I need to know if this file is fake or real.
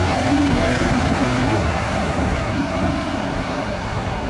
fake